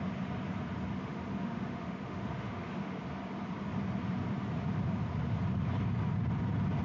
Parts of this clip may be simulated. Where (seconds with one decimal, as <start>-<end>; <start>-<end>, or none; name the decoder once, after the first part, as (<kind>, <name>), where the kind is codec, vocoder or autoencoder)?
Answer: 1.0-3.0 (autoencoder, DAC-VAE)